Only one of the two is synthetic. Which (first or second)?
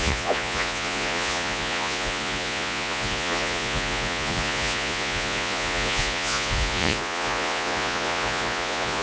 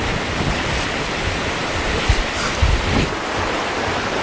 first